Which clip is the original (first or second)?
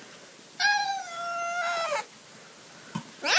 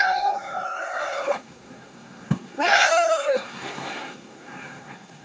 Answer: first